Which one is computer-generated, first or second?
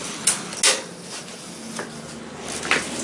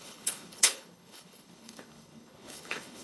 second